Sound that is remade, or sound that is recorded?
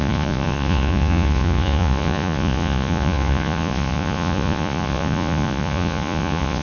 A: remade